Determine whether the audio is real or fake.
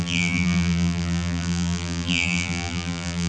fake